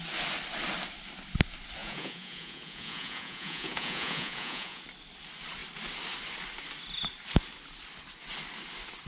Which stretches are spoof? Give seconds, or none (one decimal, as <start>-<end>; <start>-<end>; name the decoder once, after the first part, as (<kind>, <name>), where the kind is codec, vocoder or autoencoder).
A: 1.8-4.8 (vocoder, Vocos)